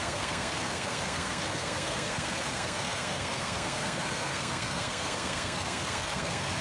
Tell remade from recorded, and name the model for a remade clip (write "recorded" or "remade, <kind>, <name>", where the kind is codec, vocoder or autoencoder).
remade, codec, SNAC